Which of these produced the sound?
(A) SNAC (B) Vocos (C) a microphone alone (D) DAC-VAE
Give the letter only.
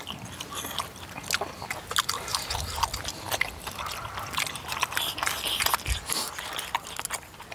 C